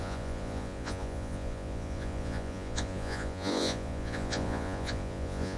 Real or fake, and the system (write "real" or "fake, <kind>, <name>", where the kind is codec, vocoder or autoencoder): fake, vocoder, Vocos